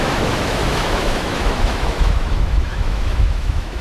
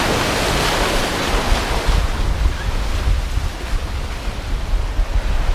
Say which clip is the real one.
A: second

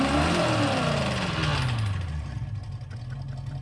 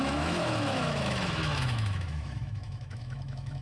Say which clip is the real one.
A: first